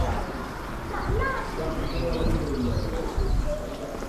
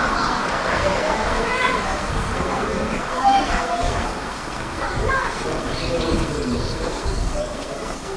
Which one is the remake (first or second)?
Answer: second